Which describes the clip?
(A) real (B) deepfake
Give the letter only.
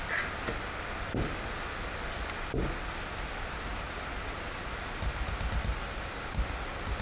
A